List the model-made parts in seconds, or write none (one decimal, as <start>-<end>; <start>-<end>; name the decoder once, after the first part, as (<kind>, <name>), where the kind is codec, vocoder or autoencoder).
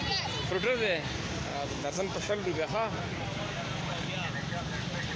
none